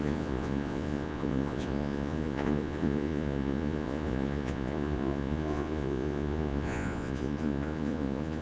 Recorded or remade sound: remade